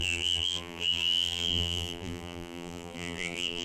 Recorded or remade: remade